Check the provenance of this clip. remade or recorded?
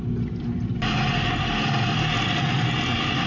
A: recorded